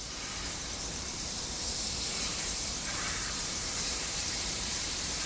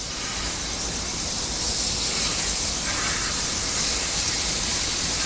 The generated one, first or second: first